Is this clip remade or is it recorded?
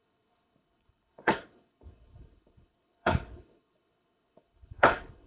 remade